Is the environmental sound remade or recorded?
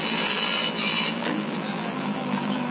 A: remade